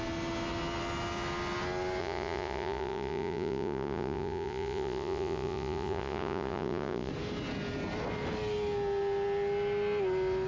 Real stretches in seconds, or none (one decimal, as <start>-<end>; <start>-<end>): 0.0-2.0; 7.1-10.5